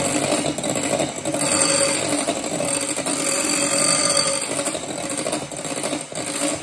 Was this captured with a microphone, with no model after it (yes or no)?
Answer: yes